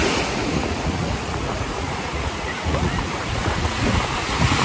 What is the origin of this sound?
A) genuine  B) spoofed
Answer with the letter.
B